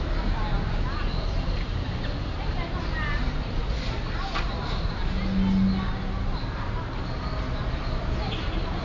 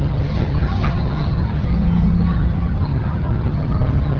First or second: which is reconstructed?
second